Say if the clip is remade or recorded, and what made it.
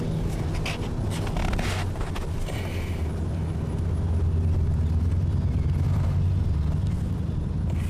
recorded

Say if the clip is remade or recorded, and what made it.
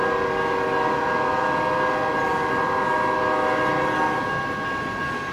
recorded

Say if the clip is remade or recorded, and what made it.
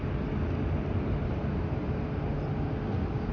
recorded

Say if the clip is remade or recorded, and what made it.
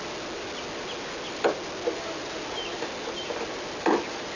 recorded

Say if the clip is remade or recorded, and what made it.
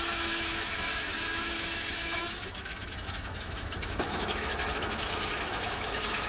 remade, autoencoder, DAC-VAE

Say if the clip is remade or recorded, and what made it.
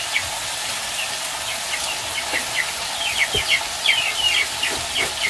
recorded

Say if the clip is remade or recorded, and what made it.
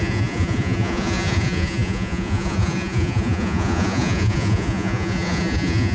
remade, vocoder, Vocos